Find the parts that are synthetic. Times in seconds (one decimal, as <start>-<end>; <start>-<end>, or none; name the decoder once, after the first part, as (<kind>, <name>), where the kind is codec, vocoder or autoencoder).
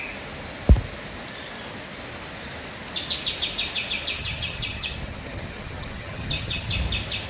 4.2-6.7 (vocoder, HiFi-GAN)